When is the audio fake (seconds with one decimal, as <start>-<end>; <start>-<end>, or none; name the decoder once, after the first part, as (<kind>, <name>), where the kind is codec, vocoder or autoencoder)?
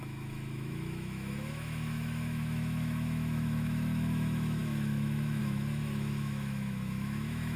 0.0-7.6 (autoencoder, DAC-VAE)